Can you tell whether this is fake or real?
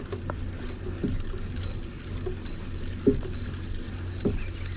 real